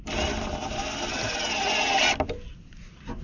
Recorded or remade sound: recorded